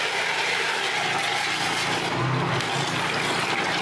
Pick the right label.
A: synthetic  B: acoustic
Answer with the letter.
B